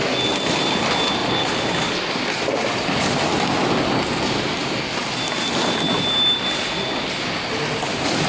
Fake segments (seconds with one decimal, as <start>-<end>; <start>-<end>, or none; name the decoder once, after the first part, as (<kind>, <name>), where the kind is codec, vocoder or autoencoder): none